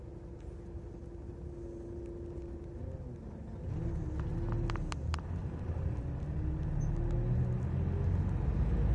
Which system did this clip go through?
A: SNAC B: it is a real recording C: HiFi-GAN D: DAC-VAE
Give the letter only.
B